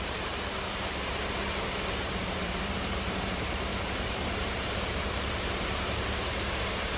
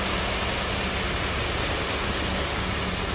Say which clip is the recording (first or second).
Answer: second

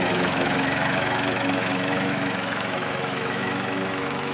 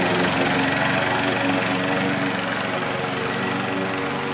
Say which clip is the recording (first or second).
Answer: second